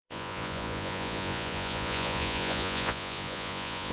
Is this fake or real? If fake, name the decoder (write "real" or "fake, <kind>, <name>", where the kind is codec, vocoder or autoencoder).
fake, vocoder, Vocos